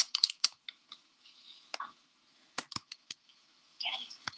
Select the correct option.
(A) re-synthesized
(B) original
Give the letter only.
A